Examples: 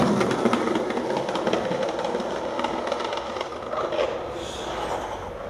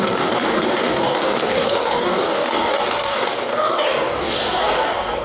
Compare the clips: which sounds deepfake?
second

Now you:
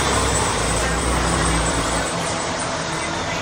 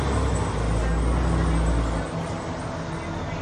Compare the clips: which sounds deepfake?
first